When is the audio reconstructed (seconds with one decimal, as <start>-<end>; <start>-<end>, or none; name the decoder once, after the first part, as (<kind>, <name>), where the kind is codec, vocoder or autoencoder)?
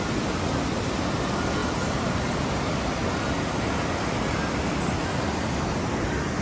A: 1.6-2.4 (vocoder, BigVGAN v2)